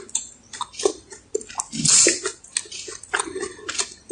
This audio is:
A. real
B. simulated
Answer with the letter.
A